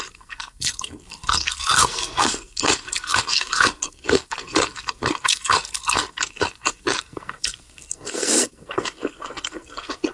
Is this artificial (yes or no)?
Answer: yes